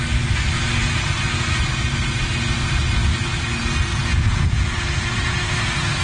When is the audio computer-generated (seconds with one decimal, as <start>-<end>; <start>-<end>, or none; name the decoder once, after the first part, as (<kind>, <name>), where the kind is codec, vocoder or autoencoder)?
4.0-5.3 (vocoder, Vocos)